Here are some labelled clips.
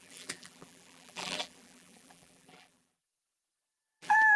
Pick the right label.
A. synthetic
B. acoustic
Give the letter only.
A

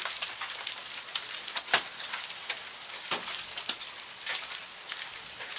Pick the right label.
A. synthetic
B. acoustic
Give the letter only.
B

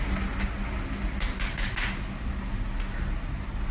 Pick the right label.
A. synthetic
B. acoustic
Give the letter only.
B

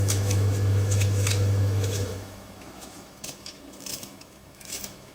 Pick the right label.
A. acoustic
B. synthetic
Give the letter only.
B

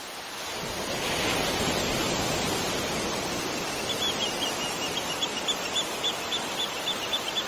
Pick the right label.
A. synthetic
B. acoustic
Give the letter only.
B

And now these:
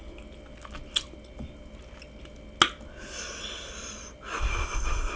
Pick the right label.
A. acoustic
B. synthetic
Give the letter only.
A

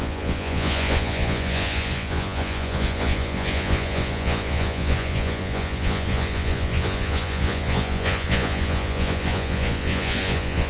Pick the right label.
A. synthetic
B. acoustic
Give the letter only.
A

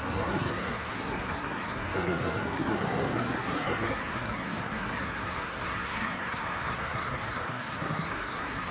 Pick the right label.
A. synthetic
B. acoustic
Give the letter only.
A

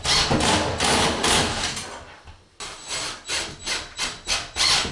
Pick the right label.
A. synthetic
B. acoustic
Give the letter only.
B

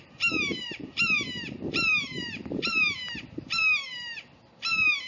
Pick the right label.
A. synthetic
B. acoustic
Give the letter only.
A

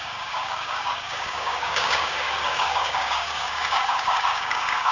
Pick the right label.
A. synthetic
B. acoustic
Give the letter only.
A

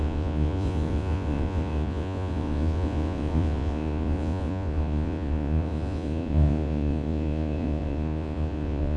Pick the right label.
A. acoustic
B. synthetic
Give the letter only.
B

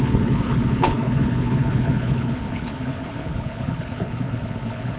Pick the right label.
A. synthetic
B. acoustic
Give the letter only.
A